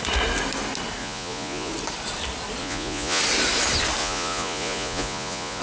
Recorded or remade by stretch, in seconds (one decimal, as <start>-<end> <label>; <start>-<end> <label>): 0.0-1.0 recorded; 1.0-1.7 remade; 1.7-2.6 recorded; 2.6-3.2 remade; 3.2-4.0 recorded; 4.0-5.6 remade

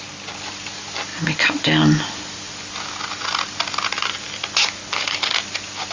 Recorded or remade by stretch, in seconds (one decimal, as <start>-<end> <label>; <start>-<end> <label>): 0.0-4.8 recorded; 4.8-5.3 remade; 5.3-5.9 recorded

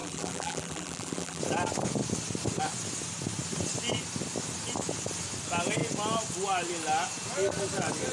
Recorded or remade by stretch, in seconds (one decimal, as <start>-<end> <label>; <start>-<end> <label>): 0.0-1.4 remade; 1.4-8.1 recorded

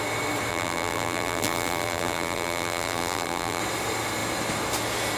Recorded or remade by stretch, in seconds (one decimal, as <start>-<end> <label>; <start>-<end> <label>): 0.0-0.5 recorded; 0.5-3.6 remade; 3.6-5.2 recorded

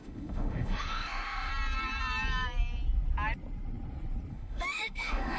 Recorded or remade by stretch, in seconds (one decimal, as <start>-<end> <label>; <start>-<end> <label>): 0.0-1.5 remade; 1.5-4.3 recorded; 4.3-5.4 remade

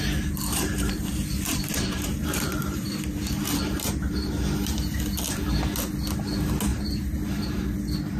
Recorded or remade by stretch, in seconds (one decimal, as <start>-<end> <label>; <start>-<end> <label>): 0.0-0.5 recorded; 0.5-5.0 remade; 5.0-6.7 recorded; 6.7-7.6 remade; 7.6-8.2 recorded

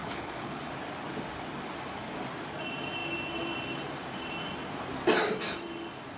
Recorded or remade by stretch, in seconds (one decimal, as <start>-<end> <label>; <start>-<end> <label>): 0.0-0.7 remade; 0.7-6.2 recorded

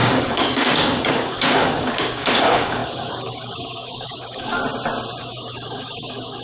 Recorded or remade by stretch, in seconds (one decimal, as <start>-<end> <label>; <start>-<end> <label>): 0.0-4.6 remade; 4.6-5.2 recorded; 5.2-6.4 remade